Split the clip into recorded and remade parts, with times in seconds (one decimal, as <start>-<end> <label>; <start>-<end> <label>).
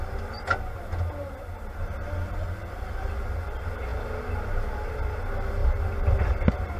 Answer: 0.0-6.8 recorded